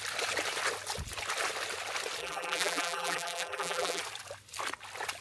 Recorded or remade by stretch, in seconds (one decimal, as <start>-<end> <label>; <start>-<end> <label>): 0.0-2.2 recorded; 2.2-4.0 remade; 4.0-5.2 recorded